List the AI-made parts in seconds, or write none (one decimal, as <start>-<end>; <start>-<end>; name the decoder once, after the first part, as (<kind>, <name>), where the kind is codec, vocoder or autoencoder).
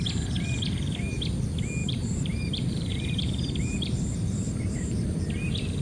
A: 1.8-5.2 (vocoder, BigVGAN v2)